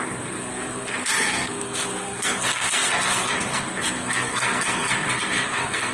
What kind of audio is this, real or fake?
fake